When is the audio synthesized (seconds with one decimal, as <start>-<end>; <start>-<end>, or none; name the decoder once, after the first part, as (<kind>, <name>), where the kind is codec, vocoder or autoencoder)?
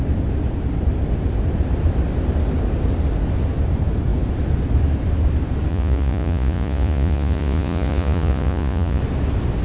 5.7-9.0 (vocoder, Vocos)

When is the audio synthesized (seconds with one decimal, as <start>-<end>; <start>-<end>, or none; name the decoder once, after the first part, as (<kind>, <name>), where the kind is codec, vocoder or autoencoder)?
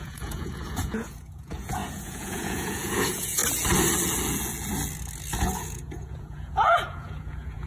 0.0-3.4 (vocoder, Vocos); 5.3-7.7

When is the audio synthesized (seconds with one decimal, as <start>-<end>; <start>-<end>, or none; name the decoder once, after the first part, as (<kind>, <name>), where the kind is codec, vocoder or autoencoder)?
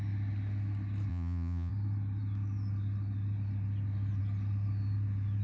1.1-1.7 (vocoder, Vocos)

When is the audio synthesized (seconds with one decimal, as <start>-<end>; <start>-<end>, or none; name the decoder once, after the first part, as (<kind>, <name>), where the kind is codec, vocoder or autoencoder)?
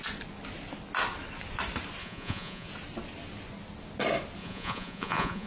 2.0-2.7 (vocoder, Vocos); 4.4-5.5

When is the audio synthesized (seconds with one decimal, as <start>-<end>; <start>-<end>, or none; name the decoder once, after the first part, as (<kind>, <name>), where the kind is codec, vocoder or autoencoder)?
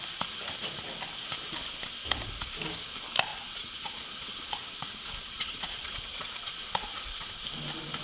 3.3-7.3 (vocoder, Vocos)